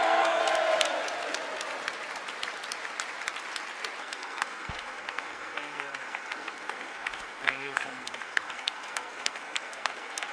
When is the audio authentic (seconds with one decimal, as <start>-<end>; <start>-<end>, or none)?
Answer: 0.4-4.0